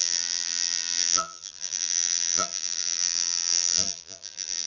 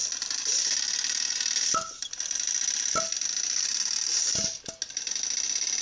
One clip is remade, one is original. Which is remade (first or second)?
first